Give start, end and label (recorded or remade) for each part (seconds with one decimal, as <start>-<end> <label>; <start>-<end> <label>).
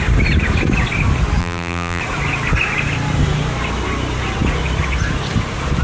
0.0-1.4 recorded; 1.4-2.0 remade; 2.0-5.8 recorded